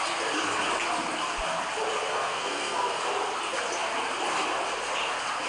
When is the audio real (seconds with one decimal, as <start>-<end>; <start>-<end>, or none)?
0.0-2.1; 3.0-5.5